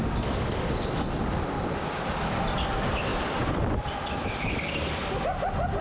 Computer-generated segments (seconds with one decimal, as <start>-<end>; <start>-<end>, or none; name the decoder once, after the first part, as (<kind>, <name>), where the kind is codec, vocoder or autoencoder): none